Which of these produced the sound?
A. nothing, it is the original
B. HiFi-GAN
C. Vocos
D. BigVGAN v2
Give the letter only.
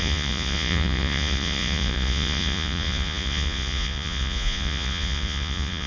C